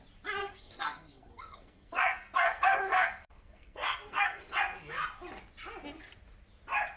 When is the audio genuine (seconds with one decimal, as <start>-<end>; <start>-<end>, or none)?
0.0-0.4; 4.5-7.0